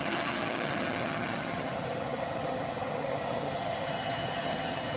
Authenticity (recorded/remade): remade